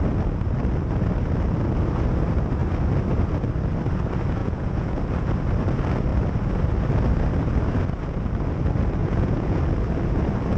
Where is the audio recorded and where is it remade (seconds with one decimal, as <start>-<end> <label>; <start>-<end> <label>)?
0.0-4.4 recorded; 4.4-5.0 remade; 5.0-9.0 recorded; 9.0-9.6 remade; 9.6-10.6 recorded